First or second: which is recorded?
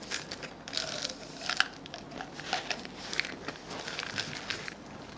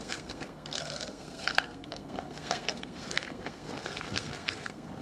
first